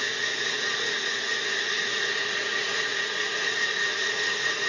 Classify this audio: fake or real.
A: fake